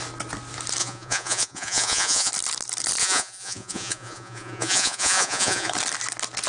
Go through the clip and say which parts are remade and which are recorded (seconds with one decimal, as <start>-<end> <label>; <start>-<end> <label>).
0.0-0.8 recorded; 0.8-2.3 remade; 2.3-3.0 recorded; 3.0-5.7 remade; 5.7-6.5 recorded

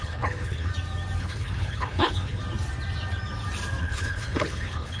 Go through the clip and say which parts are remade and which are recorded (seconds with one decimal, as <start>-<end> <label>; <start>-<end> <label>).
0.0-0.7 remade; 0.7-1.2 recorded; 1.2-2.4 remade; 2.4-3.8 recorded; 3.8-5.0 remade

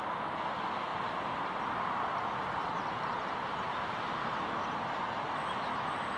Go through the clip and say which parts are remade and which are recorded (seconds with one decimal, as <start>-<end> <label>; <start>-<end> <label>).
0.0-6.2 recorded

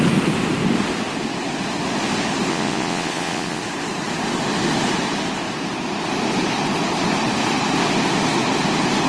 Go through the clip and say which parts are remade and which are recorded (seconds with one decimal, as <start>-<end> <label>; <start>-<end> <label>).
0.0-2.5 recorded; 2.5-3.6 remade; 3.6-9.1 recorded

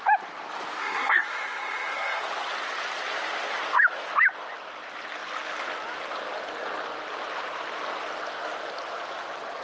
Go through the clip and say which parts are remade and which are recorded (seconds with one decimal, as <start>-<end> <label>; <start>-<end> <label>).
0.0-0.8 recorded; 0.8-2.2 remade; 2.2-9.6 recorded

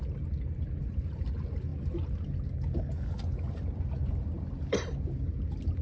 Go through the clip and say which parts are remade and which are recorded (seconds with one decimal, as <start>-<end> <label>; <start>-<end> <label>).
0.0-5.8 recorded

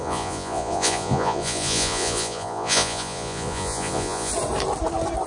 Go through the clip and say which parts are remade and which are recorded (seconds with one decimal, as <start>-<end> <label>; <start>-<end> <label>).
0.0-4.3 remade; 4.3-5.3 recorded